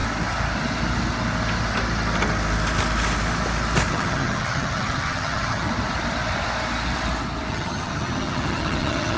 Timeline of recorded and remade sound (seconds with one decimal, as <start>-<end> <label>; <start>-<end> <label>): 0.0-3.9 recorded; 3.9-5.7 remade; 5.7-7.5 recorded; 7.5-9.2 remade